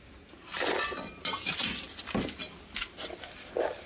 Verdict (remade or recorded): recorded